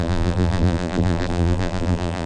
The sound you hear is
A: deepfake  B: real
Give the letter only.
A